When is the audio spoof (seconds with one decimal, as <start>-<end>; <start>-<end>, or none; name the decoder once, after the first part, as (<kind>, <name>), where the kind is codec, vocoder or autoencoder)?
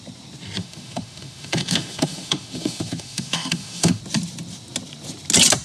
0.6-4.0 (autoencoder, DAC-VAE)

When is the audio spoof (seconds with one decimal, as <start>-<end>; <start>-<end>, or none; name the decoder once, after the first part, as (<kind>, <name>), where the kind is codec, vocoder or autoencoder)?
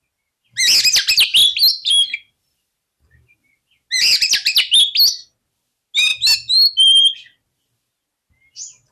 1.8-3.5 (vocoder, BigVGAN v2)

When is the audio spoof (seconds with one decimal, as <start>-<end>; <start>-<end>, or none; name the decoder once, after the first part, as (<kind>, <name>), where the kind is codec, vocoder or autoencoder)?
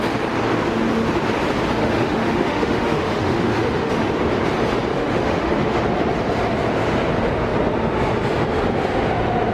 1.8-3.9 (autoencoder, DAC-VAE); 4.9-5.8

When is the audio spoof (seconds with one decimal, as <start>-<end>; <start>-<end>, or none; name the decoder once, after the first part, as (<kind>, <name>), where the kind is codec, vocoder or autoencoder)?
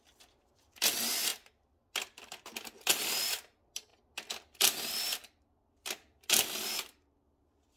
none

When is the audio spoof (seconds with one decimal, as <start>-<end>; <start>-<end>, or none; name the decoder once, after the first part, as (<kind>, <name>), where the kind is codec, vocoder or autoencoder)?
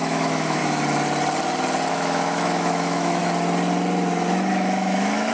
0.0-0.6 (autoencoder, DAC-VAE); 1.9-3.2; 4.5-5.3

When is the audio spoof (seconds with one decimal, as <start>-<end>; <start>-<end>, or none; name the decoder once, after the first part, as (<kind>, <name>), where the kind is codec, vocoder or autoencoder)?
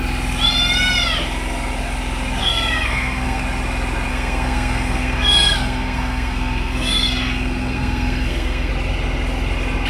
2.4-3.4 (codec, SNAC); 4.1-8.7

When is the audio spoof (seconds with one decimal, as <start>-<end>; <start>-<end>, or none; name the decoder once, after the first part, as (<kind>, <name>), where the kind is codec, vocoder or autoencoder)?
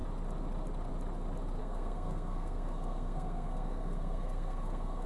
1.6-5.1 (codec, SNAC)